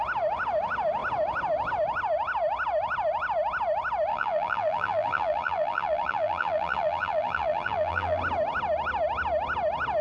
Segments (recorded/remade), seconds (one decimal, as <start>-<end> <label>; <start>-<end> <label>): 0.0-4.1 recorded; 4.1-8.2 remade; 8.2-10.0 recorded